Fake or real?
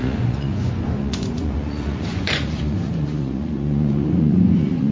fake